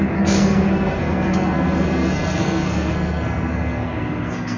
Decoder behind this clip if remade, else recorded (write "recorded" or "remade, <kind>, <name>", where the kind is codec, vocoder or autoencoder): remade, codec, SNAC